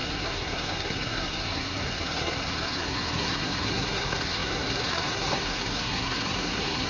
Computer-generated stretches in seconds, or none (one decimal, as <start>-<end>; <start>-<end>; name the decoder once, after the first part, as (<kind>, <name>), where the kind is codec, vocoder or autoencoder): 0.0-6.9 (codec, SNAC)